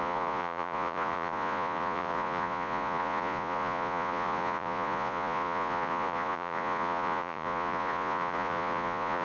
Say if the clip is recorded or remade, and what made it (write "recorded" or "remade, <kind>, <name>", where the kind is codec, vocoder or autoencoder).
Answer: remade, vocoder, Vocos